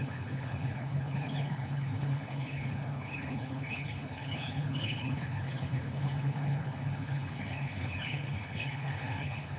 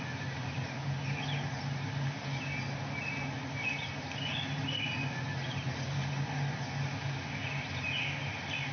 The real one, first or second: second